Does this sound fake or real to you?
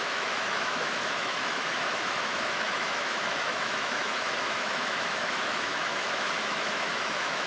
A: fake